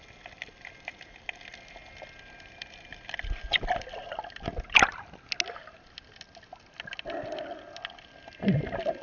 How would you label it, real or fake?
real